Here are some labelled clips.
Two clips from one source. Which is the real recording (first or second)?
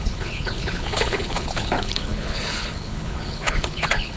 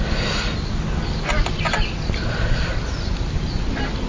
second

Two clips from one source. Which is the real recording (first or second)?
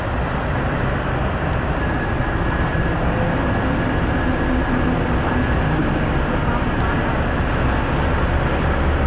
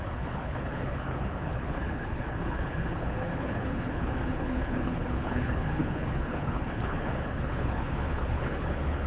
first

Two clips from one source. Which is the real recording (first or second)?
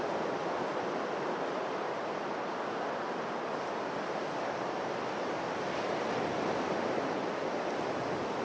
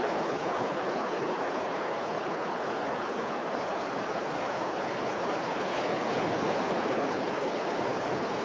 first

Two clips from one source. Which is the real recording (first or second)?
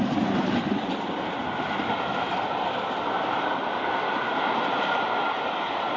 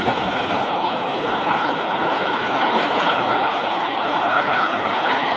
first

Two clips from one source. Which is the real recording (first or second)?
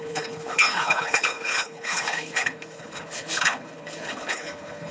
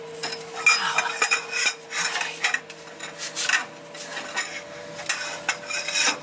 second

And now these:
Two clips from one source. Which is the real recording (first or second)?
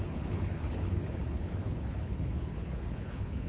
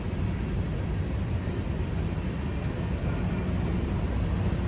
second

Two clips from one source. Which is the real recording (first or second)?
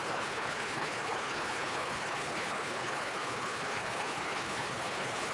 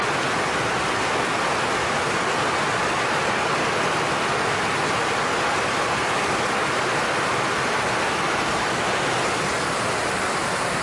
second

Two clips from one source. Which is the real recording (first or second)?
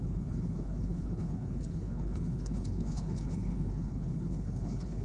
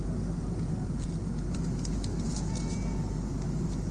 second